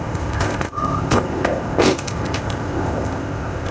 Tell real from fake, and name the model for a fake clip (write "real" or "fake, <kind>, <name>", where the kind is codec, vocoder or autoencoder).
fake, codec, ZipCodec